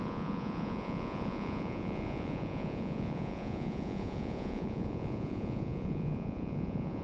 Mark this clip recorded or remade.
remade